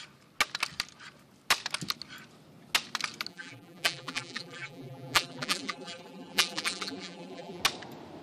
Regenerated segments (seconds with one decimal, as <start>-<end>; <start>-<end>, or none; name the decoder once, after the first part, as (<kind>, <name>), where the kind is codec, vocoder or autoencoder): 3.3-7.6 (vocoder, BigVGAN v2)

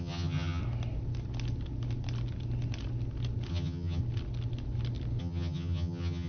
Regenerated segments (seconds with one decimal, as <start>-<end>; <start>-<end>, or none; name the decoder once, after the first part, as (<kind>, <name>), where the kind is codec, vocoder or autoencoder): 0.0-0.6 (vocoder, HiFi-GAN); 3.5-4.0; 5.2-6.3